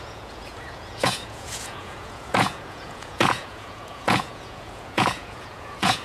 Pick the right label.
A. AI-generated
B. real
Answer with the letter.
A